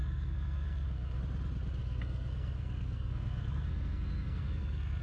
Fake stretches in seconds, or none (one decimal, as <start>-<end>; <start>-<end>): 0.0-1.2; 1.8-5.0